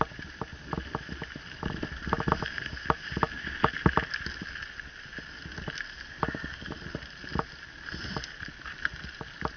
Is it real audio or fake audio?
real